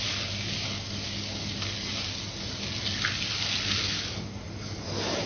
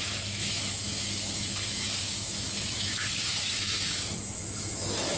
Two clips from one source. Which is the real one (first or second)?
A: first